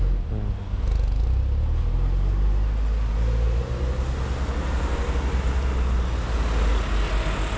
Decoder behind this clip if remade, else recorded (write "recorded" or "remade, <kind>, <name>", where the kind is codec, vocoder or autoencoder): recorded